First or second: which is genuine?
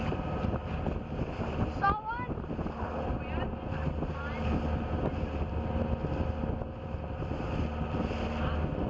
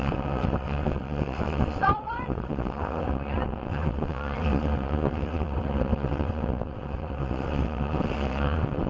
first